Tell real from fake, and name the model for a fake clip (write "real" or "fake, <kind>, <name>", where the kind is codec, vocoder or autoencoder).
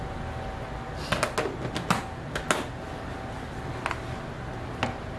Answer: real